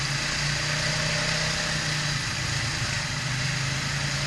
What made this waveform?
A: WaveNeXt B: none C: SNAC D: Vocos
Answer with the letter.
B